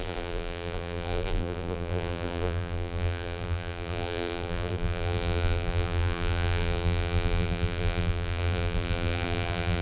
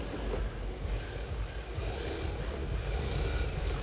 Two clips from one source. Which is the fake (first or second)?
first